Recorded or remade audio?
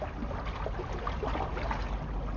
recorded